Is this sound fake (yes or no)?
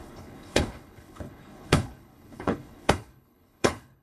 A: yes